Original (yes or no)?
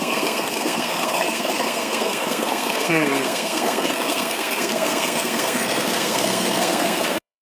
no